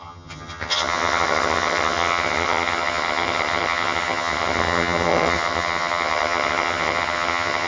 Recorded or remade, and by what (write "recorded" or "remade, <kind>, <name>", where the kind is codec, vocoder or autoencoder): remade, vocoder, HiFi-GAN